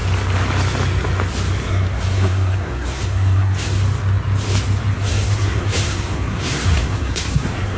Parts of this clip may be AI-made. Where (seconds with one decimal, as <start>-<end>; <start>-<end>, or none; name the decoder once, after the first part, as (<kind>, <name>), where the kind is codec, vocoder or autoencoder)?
1.7-3.8 (codec, SNAC); 5.0-7.8